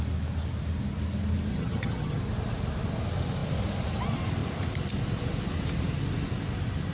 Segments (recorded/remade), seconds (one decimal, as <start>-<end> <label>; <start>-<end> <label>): 0.0-1.5 recorded; 1.5-2.2 remade; 2.2-6.9 recorded